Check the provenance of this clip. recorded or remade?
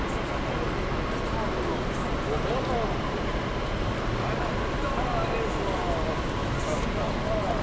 recorded